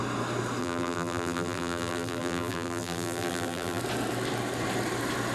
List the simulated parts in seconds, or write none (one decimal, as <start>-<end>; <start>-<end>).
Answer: 0.6-3.8

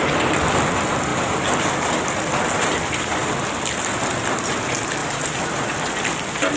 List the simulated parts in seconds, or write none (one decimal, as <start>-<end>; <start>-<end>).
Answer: 1.1-1.7; 5.0-5.7

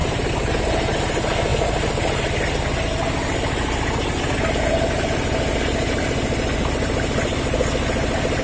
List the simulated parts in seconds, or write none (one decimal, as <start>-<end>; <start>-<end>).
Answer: 0.0-0.6

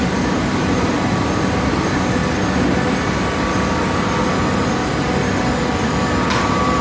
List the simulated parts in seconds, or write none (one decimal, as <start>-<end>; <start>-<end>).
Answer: 0.0-2.2; 6.3-6.8